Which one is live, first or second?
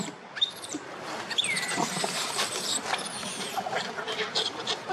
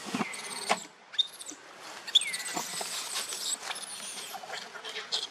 second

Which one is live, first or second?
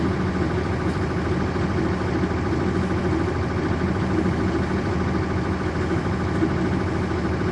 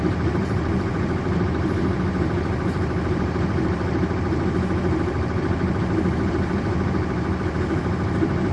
first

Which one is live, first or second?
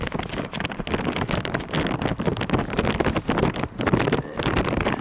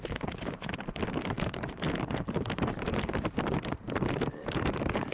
first